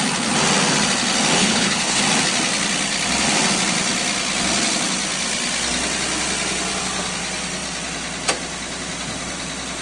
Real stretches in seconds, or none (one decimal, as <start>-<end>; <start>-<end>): 0.0-1.4; 2.0-9.8